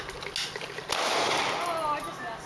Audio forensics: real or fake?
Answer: real